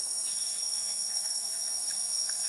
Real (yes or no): no